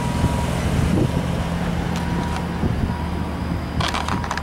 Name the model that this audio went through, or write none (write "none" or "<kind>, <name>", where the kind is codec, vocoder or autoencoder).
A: none